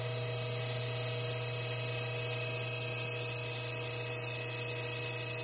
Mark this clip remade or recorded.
recorded